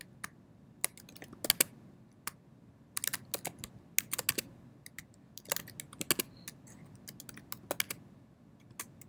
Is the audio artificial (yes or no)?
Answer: no